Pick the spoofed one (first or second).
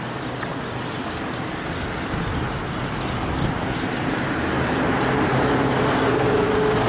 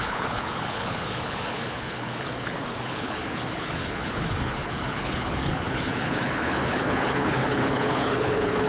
second